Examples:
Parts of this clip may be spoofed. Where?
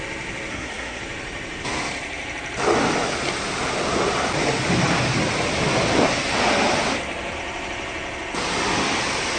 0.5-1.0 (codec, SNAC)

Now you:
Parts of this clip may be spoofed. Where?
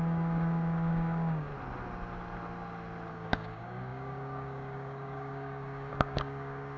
0.0-1.5 (codec, DAC); 3.1-6.8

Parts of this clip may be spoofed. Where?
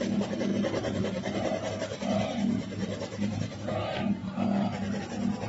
0.5-1.7 (vocoder, BigVGAN v2); 4.2-5.0